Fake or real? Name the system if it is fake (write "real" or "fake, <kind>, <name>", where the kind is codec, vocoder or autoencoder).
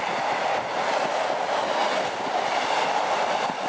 real